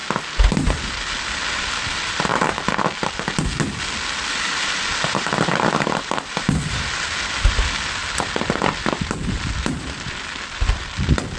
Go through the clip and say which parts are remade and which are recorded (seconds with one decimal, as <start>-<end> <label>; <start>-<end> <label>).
0.0-0.8 recorded; 0.8-2.3 remade; 2.3-3.8 recorded; 3.8-11.4 remade